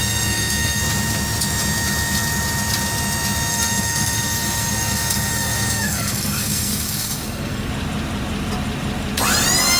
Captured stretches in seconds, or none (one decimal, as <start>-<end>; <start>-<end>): 0.8-3.5; 7.7-9.8